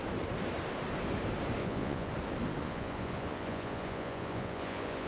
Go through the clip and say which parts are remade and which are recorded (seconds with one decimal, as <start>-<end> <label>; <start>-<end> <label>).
0.0-1.6 recorded; 1.6-2.1 remade; 2.1-2.6 recorded; 2.6-5.1 remade